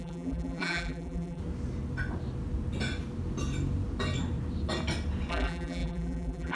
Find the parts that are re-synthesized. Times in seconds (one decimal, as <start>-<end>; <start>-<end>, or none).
0.0-1.4; 5.3-6.6